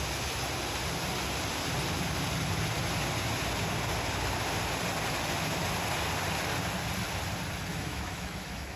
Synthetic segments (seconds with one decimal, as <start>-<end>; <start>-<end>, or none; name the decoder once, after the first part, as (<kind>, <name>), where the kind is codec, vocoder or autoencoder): 7.7-8.8 (autoencoder, DAC-VAE)